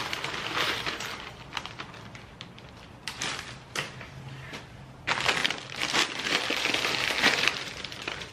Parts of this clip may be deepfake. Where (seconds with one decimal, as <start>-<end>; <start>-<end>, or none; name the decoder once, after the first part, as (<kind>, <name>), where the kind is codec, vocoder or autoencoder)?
0.0-8.3 (vocoder, BigVGAN v2)